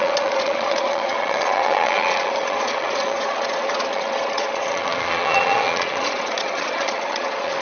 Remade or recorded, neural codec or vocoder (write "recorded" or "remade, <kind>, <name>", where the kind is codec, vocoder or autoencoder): remade, vocoder, Vocos